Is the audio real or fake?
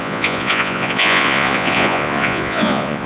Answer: fake